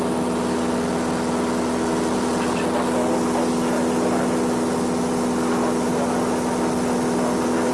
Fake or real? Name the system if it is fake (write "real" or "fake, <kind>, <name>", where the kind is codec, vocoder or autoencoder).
real